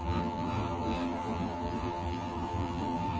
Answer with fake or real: fake